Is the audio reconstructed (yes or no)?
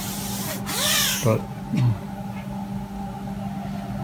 no